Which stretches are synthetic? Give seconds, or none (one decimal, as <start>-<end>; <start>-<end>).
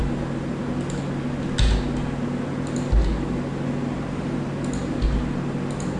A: none